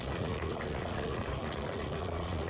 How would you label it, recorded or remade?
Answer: remade